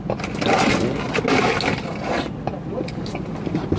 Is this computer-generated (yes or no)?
no